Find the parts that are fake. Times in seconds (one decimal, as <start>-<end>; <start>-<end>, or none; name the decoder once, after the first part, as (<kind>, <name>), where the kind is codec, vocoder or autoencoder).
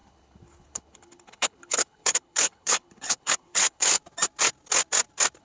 0.0-4.0 (codec, HILCodec)